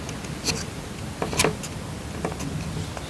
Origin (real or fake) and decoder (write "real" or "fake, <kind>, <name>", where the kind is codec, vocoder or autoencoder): real